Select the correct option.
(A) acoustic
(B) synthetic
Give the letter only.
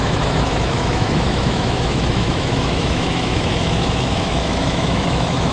B